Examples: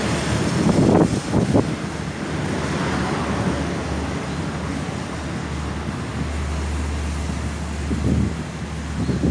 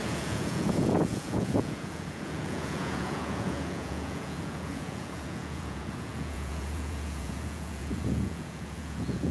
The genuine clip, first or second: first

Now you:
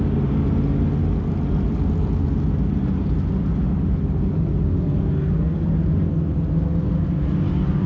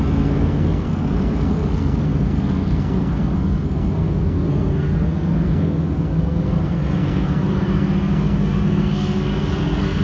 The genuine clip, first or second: first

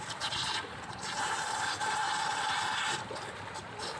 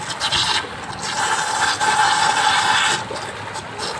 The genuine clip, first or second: second